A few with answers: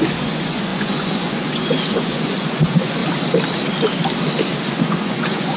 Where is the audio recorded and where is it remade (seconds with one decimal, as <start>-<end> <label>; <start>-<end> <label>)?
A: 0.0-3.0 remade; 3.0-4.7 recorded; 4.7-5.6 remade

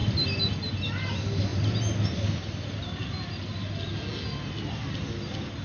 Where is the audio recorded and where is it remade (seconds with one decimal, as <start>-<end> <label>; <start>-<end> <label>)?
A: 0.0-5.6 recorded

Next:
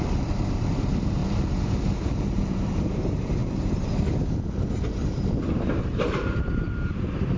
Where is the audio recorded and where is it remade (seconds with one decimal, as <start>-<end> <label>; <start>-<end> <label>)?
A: 0.0-1.2 recorded; 1.2-3.0 remade; 3.0-3.4 recorded; 3.4-3.9 remade; 3.9-5.0 recorded; 5.0-6.7 remade; 6.7-7.4 recorded

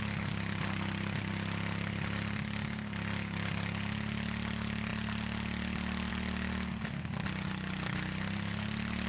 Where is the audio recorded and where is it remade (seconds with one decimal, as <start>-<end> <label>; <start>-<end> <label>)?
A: 0.0-9.1 recorded

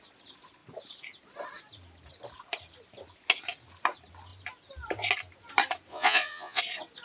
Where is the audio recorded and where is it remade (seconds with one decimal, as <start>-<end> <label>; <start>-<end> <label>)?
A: 0.0-5.9 recorded; 5.9-6.6 remade; 6.6-7.0 recorded

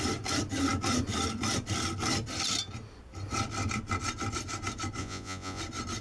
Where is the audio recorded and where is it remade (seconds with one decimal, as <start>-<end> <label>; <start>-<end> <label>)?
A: 0.0-5.0 recorded; 5.0-5.6 remade; 5.6-6.0 recorded